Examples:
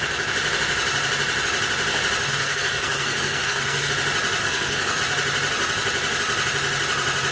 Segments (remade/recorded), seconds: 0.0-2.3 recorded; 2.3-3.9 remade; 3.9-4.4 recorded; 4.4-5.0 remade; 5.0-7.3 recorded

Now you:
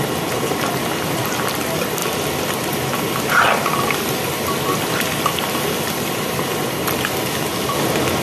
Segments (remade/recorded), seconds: 0.0-2.0 recorded; 2.0-5.7 remade; 5.7-8.2 recorded

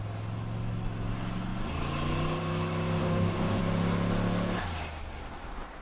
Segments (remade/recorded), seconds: 0.0-3.0 recorded; 3.0-3.6 remade; 3.6-5.8 recorded

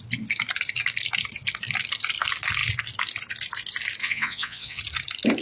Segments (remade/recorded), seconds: 0.0-4.0 recorded; 4.0-4.8 remade; 4.8-5.4 recorded

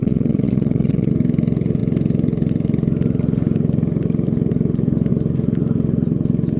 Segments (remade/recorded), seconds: 0.0-1.1 remade; 1.1-6.6 recorded